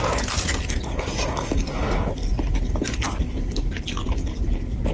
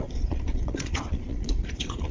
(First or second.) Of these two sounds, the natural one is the first